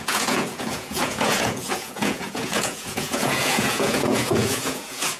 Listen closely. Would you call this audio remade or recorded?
remade